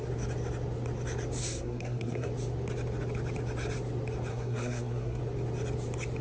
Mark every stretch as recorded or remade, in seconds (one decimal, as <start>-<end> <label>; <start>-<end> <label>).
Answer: 0.0-1.4 recorded; 1.4-2.3 remade; 2.3-4.3 recorded; 4.3-5.2 remade; 5.2-6.2 recorded

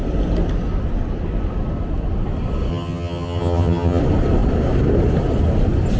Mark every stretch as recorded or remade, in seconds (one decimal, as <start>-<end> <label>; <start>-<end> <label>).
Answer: 0.0-2.7 recorded; 2.7-4.0 remade; 4.0-6.0 recorded

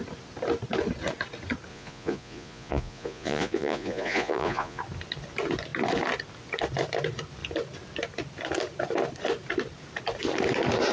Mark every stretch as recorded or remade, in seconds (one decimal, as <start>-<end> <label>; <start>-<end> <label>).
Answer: 0.0-1.7 recorded; 1.7-4.8 remade; 4.8-10.9 recorded

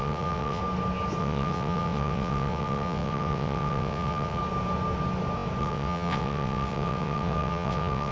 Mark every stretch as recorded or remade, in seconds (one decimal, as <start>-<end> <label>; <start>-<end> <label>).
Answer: 0.0-0.6 remade; 0.6-1.2 recorded; 1.2-4.4 remade; 4.4-5.6 recorded; 5.6-8.1 remade

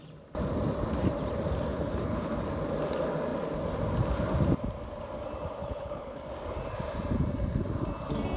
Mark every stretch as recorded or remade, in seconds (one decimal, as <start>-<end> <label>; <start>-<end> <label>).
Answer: 0.0-1.7 recorded; 1.7-2.3 remade; 2.3-5.6 recorded; 5.6-6.2 remade; 6.2-8.4 recorded

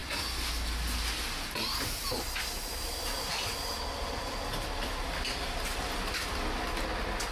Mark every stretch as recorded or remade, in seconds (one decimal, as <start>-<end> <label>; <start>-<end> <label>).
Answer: 0.0-7.3 recorded

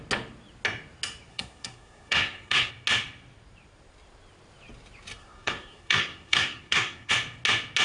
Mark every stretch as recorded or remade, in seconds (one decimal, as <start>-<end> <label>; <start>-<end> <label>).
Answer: 0.0-1.3 recorded; 1.3-2.7 remade; 2.7-5.2 recorded; 5.2-7.1 remade; 7.1-7.8 recorded